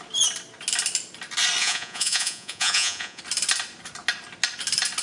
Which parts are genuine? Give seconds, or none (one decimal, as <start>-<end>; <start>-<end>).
0.0-1.6; 3.2-5.0